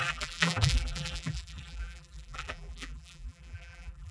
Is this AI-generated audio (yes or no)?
yes